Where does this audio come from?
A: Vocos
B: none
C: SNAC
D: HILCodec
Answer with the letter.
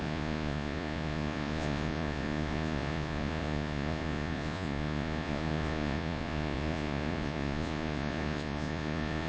A